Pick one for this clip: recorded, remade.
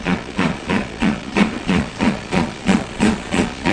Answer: remade